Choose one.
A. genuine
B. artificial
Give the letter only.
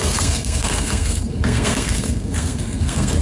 B